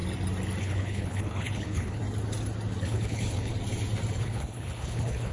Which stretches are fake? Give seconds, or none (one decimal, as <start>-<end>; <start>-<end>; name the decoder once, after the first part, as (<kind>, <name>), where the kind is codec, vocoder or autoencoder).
0.6-2.0 (codec, HILCodec); 2.8-3.5; 4.2-5.3